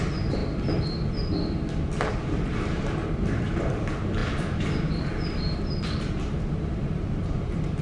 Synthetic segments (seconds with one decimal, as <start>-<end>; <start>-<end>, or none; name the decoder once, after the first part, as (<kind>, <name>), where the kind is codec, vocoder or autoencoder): 0.0-0.4 (vocoder, BigVGAN v2); 2.1-7.8